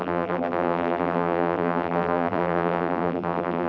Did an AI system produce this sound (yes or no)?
yes